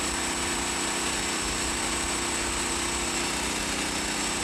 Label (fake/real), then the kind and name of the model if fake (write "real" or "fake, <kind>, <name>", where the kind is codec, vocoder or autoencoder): real